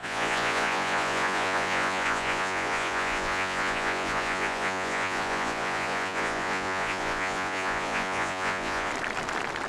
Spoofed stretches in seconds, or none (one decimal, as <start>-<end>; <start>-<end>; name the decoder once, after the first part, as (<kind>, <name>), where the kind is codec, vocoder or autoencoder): 0.0-8.9 (vocoder, Vocos)